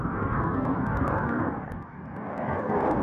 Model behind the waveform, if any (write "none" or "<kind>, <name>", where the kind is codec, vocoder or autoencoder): codec, DAC